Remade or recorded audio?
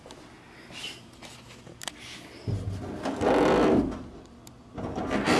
recorded